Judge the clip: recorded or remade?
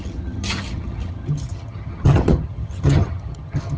remade